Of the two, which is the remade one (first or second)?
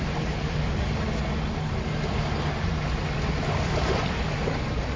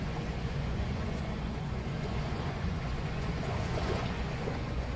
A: second